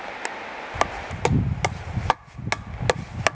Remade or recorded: recorded